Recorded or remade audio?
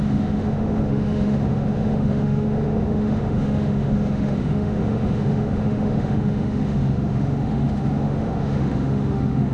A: remade